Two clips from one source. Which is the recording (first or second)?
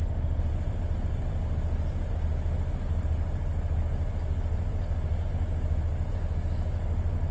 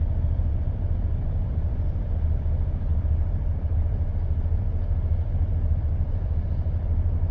first